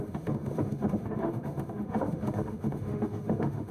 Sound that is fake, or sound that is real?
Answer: fake